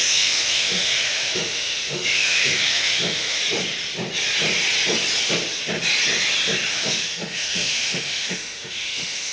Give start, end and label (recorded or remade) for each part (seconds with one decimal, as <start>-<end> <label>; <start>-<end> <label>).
0.0-3.4 remade; 3.4-6.7 recorded; 6.7-9.3 remade